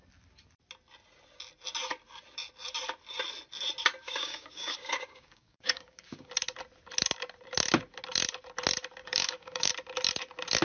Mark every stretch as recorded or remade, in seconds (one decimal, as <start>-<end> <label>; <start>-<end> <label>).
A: 0.0-4.0 recorded; 4.0-6.3 remade; 6.3-9.0 recorded; 9.0-9.7 remade; 9.7-10.6 recorded